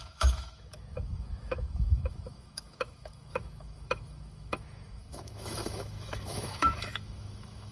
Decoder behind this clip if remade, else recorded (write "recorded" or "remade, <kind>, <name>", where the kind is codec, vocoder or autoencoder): remade, autoencoder, DAC-VAE